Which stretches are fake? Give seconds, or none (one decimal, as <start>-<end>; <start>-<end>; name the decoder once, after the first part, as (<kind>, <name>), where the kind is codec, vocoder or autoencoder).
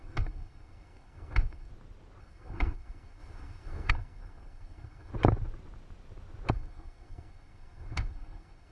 0.0-1.7 (codec, SNAC); 2.2-5.1; 6.5-8.7